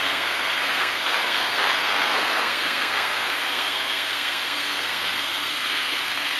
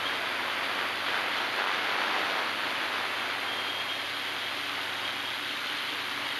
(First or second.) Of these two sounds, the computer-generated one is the first